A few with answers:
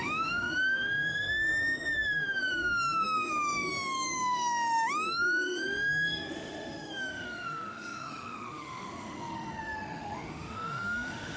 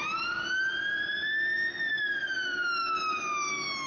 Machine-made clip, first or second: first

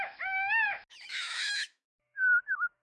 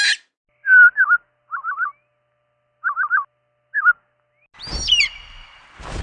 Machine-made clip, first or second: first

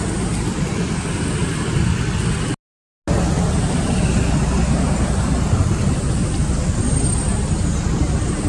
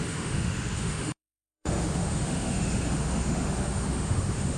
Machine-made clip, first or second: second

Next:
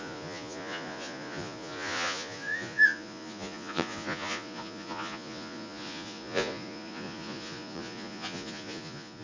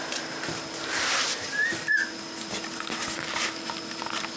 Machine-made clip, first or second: first